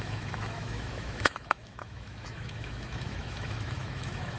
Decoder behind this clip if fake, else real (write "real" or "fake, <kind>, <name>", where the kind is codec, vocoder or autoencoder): fake, autoencoder, DAC-VAE